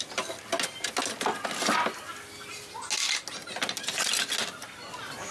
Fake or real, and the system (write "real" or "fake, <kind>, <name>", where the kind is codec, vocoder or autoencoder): real